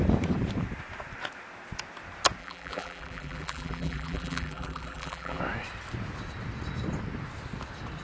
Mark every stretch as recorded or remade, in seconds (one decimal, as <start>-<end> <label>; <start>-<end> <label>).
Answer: 0.0-2.4 recorded; 2.4-5.4 remade; 5.4-8.0 recorded